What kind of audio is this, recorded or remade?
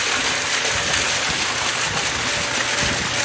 recorded